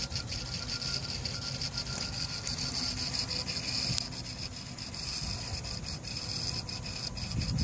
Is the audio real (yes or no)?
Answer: yes